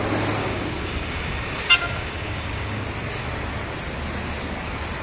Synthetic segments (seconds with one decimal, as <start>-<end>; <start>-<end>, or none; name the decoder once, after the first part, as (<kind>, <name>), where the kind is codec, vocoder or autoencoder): 0.4-2.8 (codec, DAC)